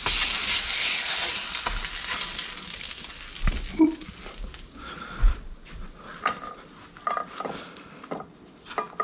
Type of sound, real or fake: real